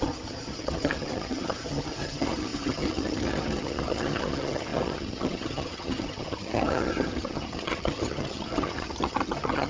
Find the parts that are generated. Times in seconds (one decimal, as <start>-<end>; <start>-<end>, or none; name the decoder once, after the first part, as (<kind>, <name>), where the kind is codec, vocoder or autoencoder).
0.0-9.7 (vocoder, HiFi-GAN)

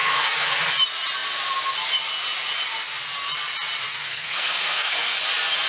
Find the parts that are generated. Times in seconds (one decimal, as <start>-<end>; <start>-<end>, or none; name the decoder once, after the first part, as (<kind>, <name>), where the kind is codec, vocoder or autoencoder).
0.0-0.6 (codec, SNAC); 3.9-5.2